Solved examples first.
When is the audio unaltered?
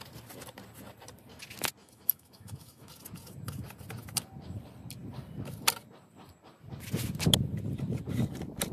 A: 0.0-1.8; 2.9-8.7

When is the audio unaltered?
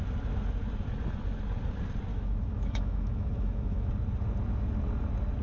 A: 0.0-2.1; 3.9-5.4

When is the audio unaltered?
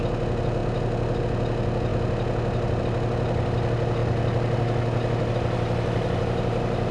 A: 0.0-6.9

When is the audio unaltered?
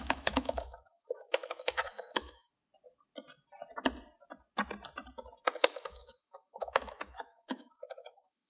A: 2.5-5.6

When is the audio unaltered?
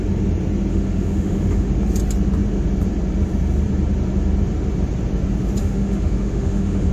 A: 0.0-0.7; 1.7-5.6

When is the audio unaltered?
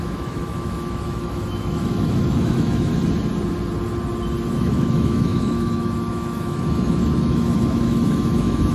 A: 2.9-4.4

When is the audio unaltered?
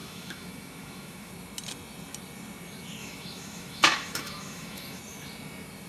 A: 1.3-3.0; 5.0-5.9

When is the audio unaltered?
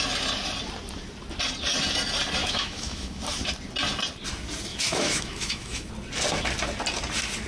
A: 0.0-2.4; 3.2-4.7; 5.9-7.5